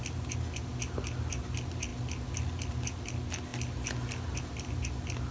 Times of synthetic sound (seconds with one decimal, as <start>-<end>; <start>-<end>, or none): none